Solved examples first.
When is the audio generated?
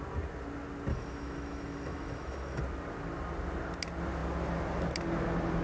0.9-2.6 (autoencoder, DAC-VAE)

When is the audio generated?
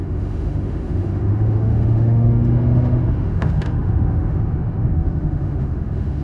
0.0-6.2 (autoencoder, DAC-VAE)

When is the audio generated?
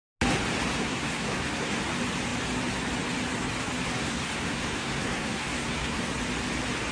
0.8-1.8 (codec, SNAC); 4.0-6.0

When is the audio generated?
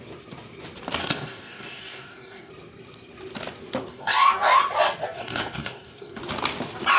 1.0-2.5 (codec, DAC); 3.9-4.6; 5.0-6.2